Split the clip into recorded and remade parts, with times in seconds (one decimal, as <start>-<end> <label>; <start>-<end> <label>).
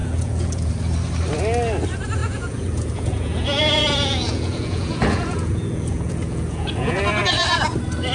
0.0-0.7 remade; 0.7-2.2 recorded; 2.2-7.0 remade; 7.0-8.1 recorded